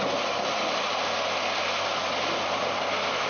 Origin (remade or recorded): recorded